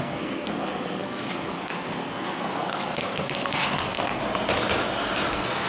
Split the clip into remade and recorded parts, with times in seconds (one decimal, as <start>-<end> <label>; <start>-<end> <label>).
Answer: 0.0-4.2 remade; 4.2-5.3 recorded; 5.3-5.7 remade